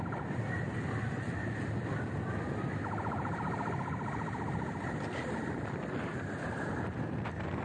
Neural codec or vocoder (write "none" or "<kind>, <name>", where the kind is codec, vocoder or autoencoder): none